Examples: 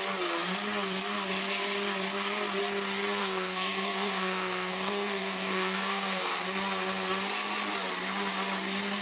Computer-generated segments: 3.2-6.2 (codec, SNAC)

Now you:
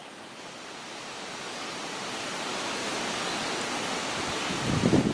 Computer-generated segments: 2.5-3.0 (autoencoder, DAC-VAE)